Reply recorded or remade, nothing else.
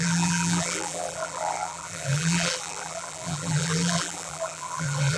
remade